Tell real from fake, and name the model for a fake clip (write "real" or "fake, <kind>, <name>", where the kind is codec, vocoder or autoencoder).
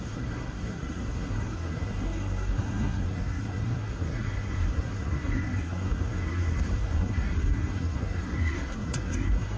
fake, codec, SNAC